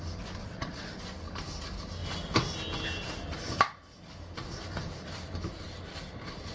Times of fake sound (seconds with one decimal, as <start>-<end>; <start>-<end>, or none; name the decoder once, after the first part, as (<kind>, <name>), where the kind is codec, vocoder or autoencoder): 0.4-0.9 (vocoder, WaveNeXt)